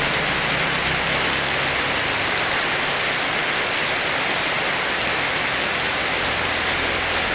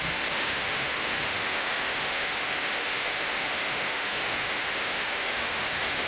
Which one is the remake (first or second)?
second